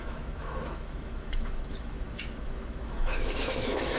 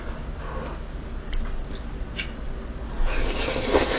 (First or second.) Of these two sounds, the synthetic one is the first